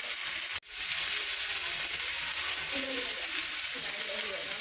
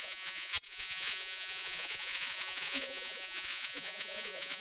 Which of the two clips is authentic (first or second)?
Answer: first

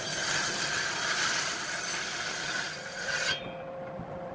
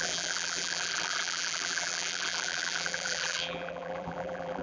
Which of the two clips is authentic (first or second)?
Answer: first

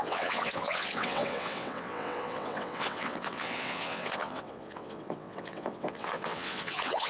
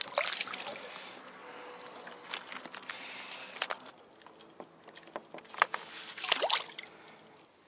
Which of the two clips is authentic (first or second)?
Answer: second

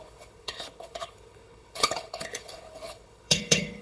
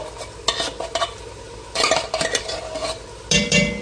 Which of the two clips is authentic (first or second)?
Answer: second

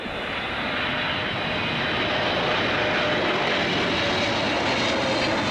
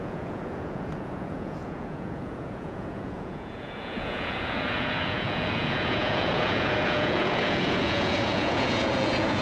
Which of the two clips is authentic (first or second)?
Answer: first